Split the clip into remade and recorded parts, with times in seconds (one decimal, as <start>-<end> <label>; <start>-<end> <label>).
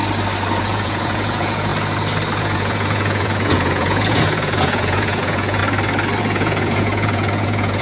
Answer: 0.0-0.6 recorded; 0.6-1.7 remade; 1.7-2.4 recorded; 2.4-5.6 remade; 5.6-6.2 recorded; 6.2-7.8 remade